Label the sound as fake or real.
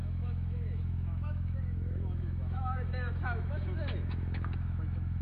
fake